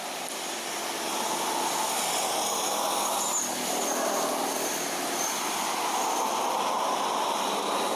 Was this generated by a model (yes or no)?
no